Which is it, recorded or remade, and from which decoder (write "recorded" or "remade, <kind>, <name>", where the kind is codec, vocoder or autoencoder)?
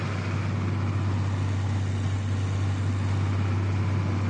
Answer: recorded